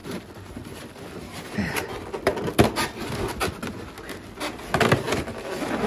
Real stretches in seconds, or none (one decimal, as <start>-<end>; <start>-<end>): 3.5-5.9